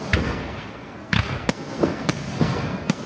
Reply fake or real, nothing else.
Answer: fake